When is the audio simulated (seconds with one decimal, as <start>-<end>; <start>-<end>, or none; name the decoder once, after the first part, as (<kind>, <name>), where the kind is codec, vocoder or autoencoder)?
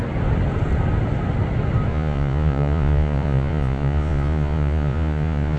1.9-5.6 (vocoder, Vocos)